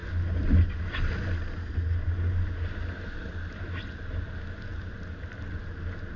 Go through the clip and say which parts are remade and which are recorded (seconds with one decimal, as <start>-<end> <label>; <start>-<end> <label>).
0.0-6.2 recorded